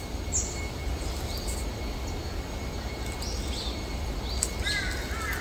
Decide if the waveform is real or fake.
real